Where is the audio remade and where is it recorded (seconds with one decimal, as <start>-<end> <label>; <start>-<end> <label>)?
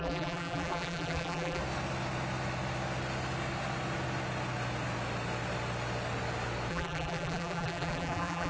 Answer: 0.0-1.6 remade; 1.6-6.7 recorded; 6.7-8.5 remade